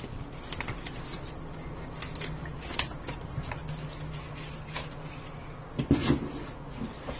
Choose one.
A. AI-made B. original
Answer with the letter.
B